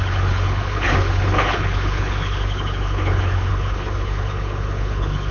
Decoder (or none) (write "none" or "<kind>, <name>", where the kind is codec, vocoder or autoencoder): codec, HILCodec